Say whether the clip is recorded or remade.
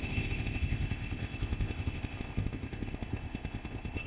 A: remade